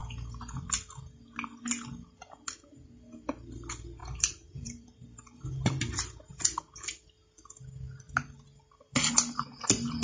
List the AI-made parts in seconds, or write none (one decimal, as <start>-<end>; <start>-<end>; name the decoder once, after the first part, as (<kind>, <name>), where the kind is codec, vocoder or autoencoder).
4.0-5.4 (vocoder, BigVGAN v2)